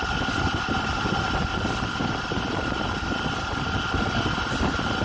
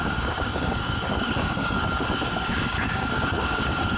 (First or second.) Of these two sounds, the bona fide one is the first